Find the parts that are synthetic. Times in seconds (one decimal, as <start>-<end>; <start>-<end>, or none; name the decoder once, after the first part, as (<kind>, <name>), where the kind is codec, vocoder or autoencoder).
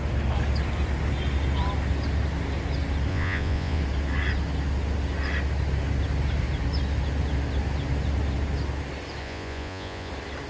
3.1-3.8 (vocoder, Vocos); 9.2-10.1